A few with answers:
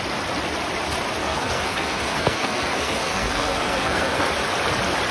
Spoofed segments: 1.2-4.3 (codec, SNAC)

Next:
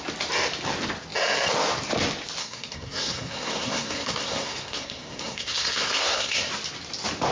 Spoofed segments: 2.4-6.5 (codec, SNAC)

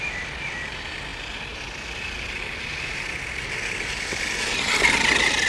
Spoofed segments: none